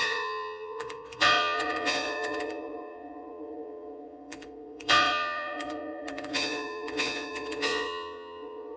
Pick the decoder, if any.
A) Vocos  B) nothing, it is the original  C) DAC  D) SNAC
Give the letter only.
A